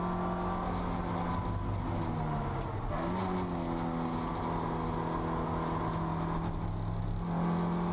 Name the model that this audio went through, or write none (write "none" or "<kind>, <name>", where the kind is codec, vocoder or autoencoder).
none